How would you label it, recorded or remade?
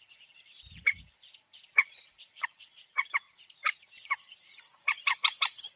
remade